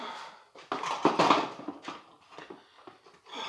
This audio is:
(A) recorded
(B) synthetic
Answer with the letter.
A